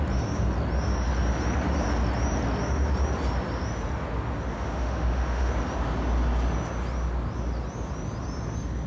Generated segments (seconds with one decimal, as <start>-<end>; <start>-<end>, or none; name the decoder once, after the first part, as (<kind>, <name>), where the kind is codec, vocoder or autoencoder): 4.5-5.5 (autoencoder, DAC-VAE)

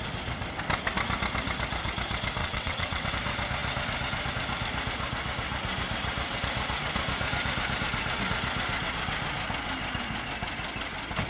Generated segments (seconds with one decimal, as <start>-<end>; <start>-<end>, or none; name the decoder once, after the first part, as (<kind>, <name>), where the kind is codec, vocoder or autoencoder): 2.4-3.1 (vocoder, WaveNeXt)

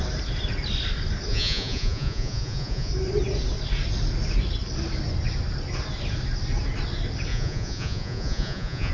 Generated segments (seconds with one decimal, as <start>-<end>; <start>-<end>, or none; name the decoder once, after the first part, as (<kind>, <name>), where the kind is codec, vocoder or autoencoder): 1.3-2.9 (vocoder, Vocos); 7.3-8.9

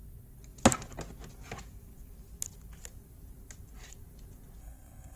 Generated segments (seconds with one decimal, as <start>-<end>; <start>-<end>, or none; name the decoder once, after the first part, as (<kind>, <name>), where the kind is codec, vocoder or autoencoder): 4.6-5.2 (codec, SNAC)

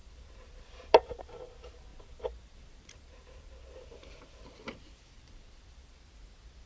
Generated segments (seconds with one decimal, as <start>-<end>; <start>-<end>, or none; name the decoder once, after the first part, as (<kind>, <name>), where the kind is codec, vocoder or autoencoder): 0.0-1.2 (vocoder, BigVGAN v2); 1.9-5.9

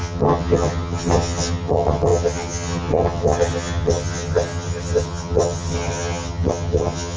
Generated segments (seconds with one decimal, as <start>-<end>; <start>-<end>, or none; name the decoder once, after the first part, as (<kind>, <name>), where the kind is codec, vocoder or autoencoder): 0.0-7.2 (vocoder, HiFi-GAN)